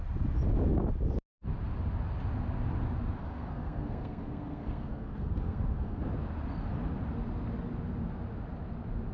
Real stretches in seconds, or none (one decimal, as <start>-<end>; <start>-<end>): 0.0-3.2; 6.0-9.1